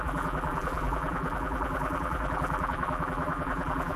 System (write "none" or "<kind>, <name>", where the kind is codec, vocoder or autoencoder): vocoder, BigVGAN v2